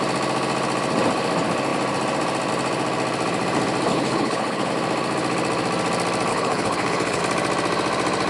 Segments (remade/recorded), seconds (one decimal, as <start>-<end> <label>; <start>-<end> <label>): 0.0-3.9 recorded; 3.9-4.7 remade; 4.7-6.3 recorded; 6.3-7.2 remade; 7.2-8.3 recorded